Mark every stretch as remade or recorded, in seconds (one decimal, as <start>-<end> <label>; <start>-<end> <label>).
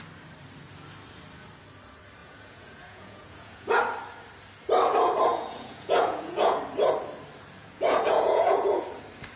0.0-2.2 recorded; 2.2-3.8 remade; 3.8-5.3 recorded; 5.3-6.6 remade; 6.6-7.6 recorded; 7.6-8.9 remade; 8.9-9.4 recorded